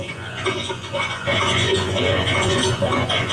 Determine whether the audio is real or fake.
fake